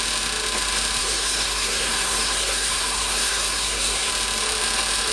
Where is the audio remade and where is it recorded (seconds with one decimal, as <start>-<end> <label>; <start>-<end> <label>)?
0.0-1.0 recorded; 1.0-4.1 remade; 4.1-5.1 recorded